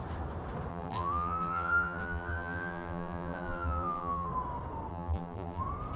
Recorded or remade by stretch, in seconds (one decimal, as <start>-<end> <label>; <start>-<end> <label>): 0.0-0.7 recorded; 0.7-4.3 remade; 4.3-4.9 recorded; 4.9-5.6 remade; 5.6-6.0 recorded